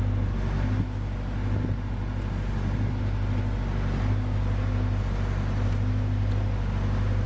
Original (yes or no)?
yes